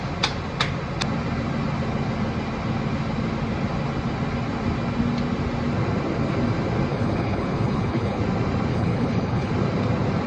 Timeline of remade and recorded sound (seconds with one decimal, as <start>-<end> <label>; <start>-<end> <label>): 0.0-6.9 recorded; 6.9-8.2 remade; 8.2-8.7 recorded; 8.7-9.5 remade; 9.5-10.3 recorded